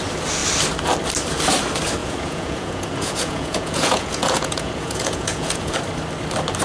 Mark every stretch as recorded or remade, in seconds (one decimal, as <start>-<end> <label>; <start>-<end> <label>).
0.0-2.0 recorded; 2.0-5.7 remade; 5.7-6.6 recorded